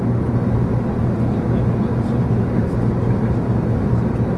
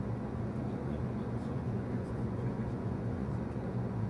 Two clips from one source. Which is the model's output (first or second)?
second